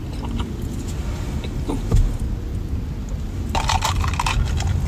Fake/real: real